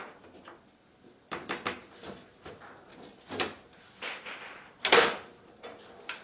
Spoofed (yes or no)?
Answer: no